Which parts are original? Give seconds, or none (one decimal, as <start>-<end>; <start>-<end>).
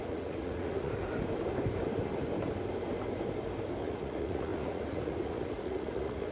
0.9-3.8